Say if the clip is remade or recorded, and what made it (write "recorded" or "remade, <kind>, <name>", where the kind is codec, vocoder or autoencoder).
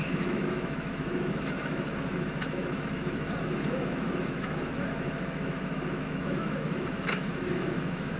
remade, autoencoder, DAC-VAE